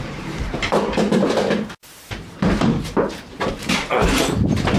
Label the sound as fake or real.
fake